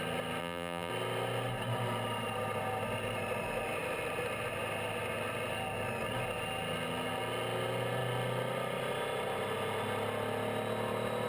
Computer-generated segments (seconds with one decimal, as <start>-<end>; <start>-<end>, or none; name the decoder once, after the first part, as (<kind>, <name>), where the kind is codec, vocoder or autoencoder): 0.4-0.9 (vocoder, BigVGAN v2)